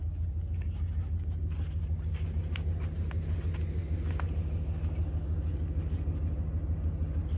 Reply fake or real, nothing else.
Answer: real